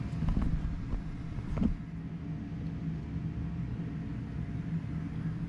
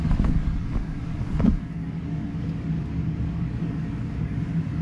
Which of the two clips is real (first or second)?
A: first